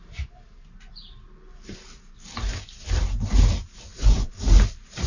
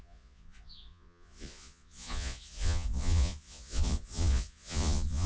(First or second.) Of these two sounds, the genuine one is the first